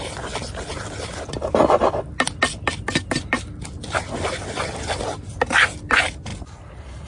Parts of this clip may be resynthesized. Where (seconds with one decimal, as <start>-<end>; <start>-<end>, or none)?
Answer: 6.3-7.1